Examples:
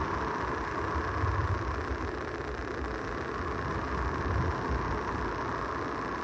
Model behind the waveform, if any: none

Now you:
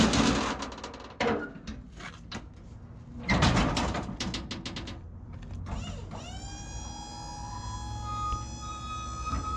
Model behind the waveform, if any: none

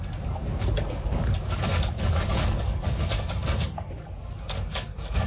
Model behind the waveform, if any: codec, DAC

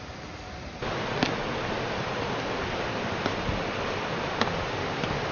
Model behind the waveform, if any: none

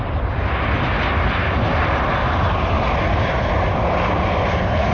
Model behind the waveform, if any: none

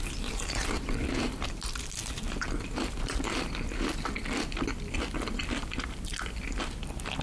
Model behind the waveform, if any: none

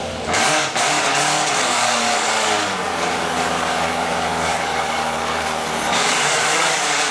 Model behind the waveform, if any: codec, DAC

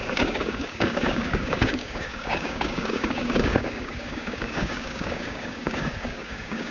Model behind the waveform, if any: codec, DAC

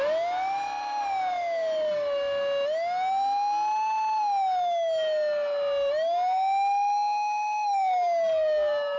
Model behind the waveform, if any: none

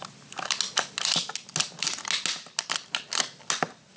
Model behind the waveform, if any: none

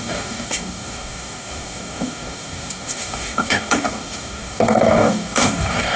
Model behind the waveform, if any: codec, DAC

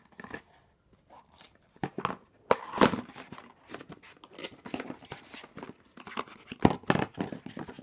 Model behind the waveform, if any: none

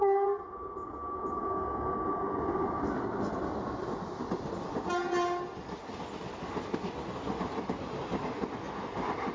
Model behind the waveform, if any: none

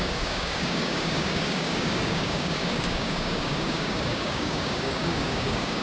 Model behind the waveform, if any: codec, DAC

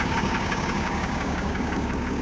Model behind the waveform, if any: codec, DAC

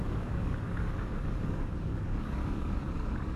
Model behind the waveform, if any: codec, DAC